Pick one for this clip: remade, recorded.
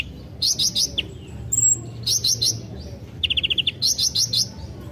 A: recorded